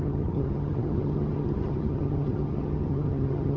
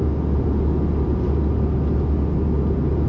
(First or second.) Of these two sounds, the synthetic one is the first